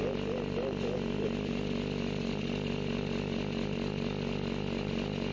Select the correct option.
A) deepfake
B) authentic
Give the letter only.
B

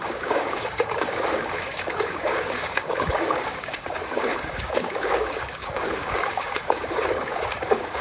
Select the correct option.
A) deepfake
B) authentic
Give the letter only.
A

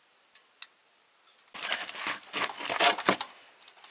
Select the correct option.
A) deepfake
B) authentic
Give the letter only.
B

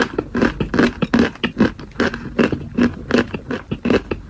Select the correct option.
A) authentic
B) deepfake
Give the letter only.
A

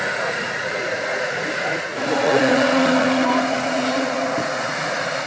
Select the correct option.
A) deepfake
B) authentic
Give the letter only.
A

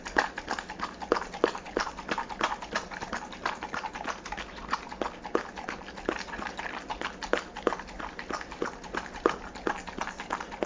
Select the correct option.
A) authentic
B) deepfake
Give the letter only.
A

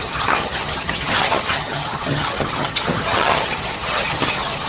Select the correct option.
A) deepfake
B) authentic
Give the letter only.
A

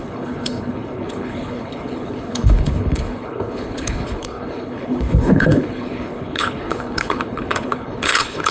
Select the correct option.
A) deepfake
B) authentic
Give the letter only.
A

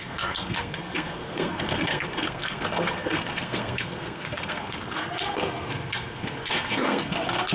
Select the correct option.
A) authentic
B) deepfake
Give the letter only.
B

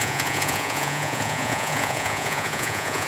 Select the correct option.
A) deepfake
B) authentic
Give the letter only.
A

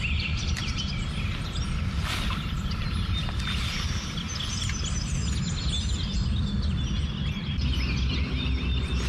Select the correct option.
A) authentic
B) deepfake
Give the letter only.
A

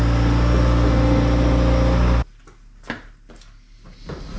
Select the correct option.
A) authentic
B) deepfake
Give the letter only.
A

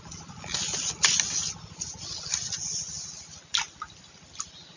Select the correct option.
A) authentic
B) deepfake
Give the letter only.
A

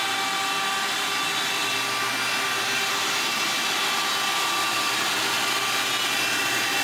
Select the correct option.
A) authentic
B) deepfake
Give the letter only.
A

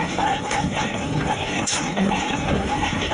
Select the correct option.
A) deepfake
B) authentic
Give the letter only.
A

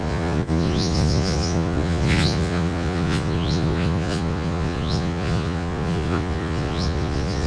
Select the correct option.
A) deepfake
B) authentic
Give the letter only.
A